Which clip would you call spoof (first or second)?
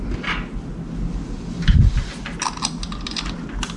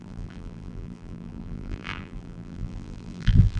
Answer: second